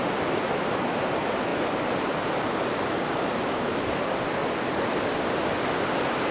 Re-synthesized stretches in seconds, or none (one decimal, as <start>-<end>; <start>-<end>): 0.6-4.4; 5.7-6.3

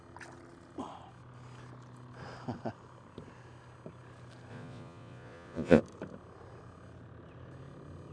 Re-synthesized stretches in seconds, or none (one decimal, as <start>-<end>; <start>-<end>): 4.5-5.8

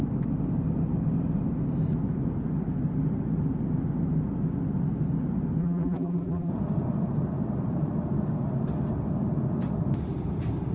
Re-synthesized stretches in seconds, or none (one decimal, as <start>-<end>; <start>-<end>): 5.6-6.5

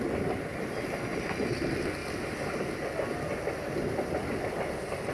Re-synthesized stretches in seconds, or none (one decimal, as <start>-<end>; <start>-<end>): none

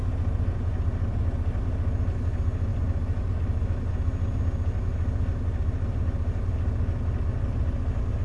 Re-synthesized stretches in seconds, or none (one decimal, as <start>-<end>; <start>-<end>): none